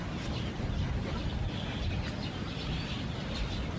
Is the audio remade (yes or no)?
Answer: no